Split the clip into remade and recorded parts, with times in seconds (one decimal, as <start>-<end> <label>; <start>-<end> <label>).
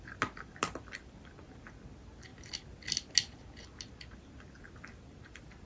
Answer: 0.0-5.7 recorded